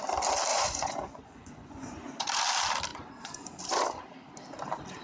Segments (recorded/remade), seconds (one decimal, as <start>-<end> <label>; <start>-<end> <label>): 0.0-0.5 recorded; 0.5-2.4 remade; 2.4-2.9 recorded; 2.9-3.5 remade; 3.5-5.0 recorded